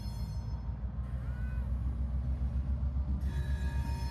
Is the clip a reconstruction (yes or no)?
no